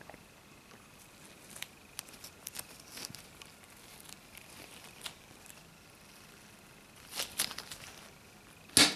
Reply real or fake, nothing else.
real